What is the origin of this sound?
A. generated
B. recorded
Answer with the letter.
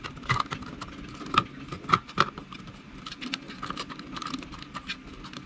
B